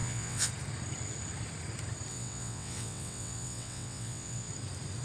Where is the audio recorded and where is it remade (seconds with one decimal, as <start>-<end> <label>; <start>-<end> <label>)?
0.0-0.5 remade; 0.5-2.1 recorded; 2.1-4.5 remade; 4.5-5.0 recorded